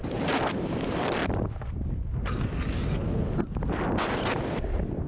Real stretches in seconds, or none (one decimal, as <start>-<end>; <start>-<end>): 1.2-4.3